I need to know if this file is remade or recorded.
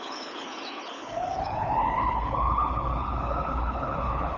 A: remade